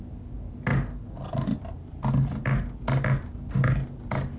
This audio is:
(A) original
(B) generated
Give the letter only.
A